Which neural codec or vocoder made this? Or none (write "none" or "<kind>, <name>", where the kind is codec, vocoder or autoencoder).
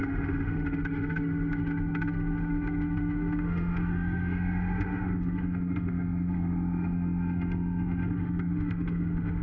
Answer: autoencoder, DAC-VAE